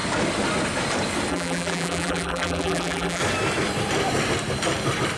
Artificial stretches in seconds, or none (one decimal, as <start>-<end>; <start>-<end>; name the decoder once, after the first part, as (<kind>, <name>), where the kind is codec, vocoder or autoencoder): 1.3-3.2 (vocoder, BigVGAN v2)